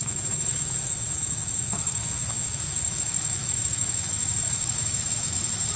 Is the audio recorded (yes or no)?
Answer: no